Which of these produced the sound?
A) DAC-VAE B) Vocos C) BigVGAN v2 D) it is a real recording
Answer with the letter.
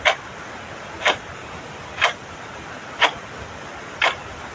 D